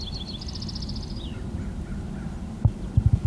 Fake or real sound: real